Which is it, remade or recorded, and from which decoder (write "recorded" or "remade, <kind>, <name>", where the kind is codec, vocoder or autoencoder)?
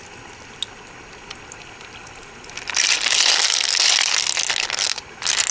recorded